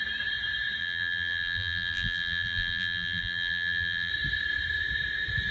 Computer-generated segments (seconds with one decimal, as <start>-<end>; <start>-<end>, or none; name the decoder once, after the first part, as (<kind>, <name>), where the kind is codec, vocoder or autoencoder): 0.8-4.1 (vocoder, BigVGAN v2)